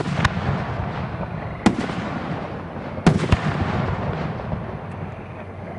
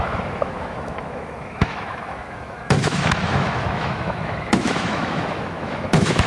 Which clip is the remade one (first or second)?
second